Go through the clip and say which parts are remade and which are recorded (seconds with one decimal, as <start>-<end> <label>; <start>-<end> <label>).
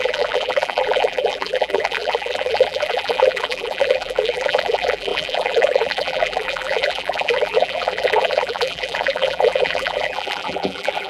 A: 0.0-11.1 remade